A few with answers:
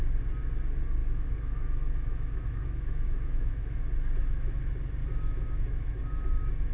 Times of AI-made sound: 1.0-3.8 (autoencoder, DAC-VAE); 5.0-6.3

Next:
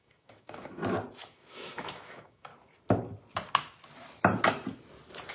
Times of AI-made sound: 0.0-0.8 (autoencoder, DAC-VAE); 1.3-2.5

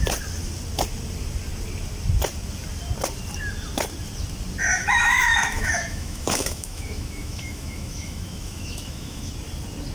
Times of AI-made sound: 4.7-9.3 (autoencoder, DAC-VAE)

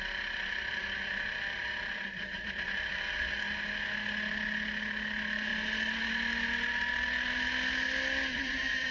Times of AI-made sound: none

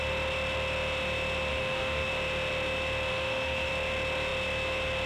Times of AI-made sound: 1.5-2.1 (autoencoder, DAC-VAE); 3.1-3.7